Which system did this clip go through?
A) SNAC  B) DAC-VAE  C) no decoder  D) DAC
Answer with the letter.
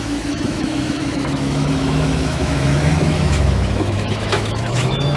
B